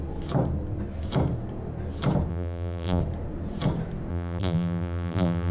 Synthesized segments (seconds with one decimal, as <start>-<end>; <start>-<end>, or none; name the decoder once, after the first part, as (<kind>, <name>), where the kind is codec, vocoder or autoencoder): 2.3-3.0 (vocoder, BigVGAN v2); 4.1-5.5